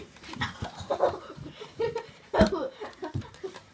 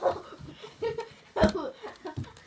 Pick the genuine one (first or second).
second